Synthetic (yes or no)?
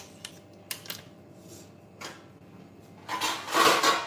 no